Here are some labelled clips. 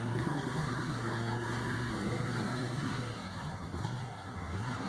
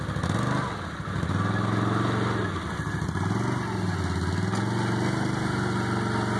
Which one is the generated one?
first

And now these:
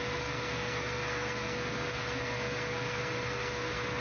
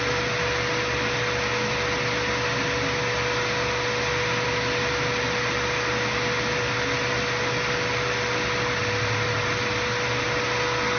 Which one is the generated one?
first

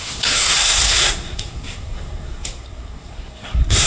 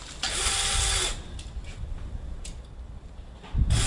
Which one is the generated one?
first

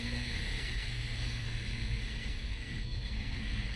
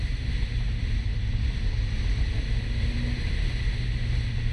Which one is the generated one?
first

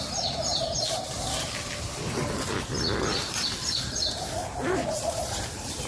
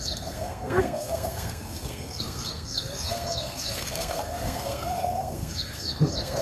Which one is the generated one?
second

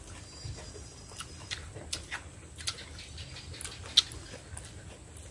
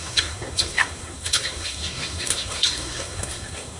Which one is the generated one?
second